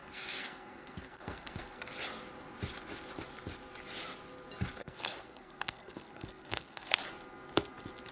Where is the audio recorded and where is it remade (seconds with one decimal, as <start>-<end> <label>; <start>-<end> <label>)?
0.0-1.9 remade; 1.9-4.8 recorded; 4.8-7.0 remade; 7.0-8.1 recorded